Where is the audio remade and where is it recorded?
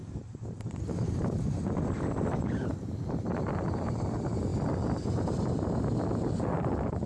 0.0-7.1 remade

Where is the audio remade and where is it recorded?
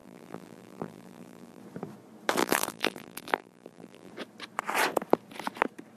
0.0-1.6 remade; 1.6-2.4 recorded; 2.4-4.1 remade; 4.1-6.0 recorded